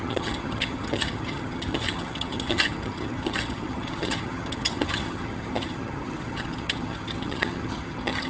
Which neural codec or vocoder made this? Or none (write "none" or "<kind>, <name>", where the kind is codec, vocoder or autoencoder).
vocoder, HiFi-GAN